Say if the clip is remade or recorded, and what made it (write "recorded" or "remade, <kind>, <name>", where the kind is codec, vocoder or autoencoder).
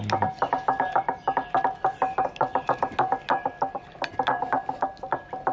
recorded